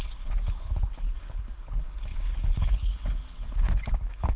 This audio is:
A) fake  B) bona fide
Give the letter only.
A